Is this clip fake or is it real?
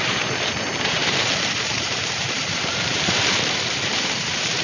fake